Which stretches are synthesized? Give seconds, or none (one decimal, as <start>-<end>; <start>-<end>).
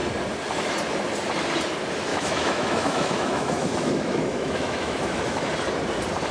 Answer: 2.1-5.5